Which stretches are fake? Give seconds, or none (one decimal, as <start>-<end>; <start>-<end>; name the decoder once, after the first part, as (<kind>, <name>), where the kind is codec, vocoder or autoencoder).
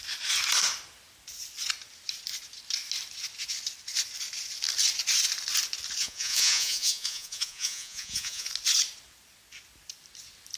6.0-8.5 (vocoder, Vocos)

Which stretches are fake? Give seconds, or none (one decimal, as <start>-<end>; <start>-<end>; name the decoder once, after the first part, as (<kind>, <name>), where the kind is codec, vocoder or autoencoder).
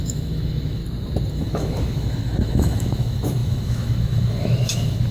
0.0-0.8 (autoencoder, DAC-VAE); 1.3-5.1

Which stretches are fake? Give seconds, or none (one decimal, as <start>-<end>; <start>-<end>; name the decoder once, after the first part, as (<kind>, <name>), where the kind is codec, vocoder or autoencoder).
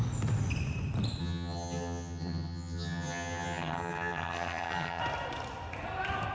1.2-5.0 (vocoder, HiFi-GAN)